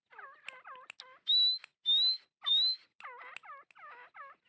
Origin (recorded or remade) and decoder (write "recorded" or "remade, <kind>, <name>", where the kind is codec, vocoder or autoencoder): recorded